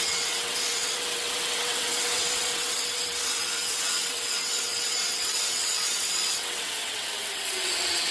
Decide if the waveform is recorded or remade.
remade